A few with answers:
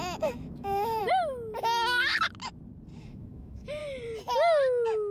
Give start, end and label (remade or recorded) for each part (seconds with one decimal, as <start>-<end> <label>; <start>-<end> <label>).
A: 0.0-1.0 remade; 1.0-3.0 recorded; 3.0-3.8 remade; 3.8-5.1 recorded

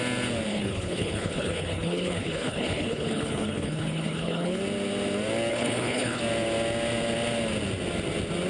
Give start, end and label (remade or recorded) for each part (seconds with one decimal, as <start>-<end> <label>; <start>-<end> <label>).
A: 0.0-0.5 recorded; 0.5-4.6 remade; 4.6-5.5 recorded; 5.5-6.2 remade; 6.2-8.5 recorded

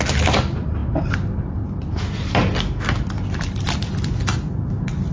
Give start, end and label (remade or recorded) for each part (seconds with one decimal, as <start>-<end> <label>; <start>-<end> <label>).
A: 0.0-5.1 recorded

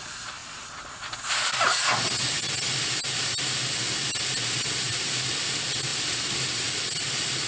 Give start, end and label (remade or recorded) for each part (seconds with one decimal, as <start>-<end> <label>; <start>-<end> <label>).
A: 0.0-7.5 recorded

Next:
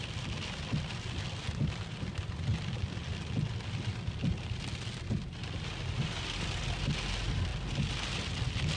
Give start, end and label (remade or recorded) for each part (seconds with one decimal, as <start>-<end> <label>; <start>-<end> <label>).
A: 0.0-8.8 recorded